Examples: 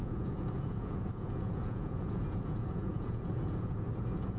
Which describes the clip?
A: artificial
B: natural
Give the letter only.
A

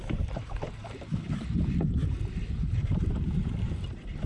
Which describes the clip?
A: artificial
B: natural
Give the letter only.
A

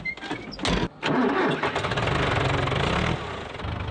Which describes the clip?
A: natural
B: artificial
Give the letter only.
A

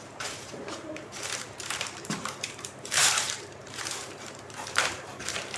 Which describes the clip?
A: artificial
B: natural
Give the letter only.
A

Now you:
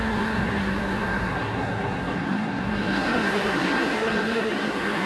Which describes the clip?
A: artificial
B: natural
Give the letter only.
A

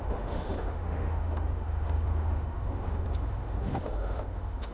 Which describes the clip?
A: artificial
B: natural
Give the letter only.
A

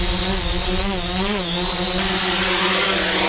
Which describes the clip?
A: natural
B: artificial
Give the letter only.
B